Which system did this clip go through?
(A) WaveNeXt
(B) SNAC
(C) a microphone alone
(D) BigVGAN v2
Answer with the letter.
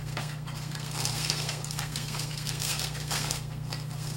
B